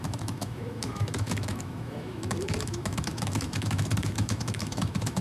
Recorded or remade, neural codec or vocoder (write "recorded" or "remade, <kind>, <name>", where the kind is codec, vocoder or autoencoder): remade, autoencoder, DAC-VAE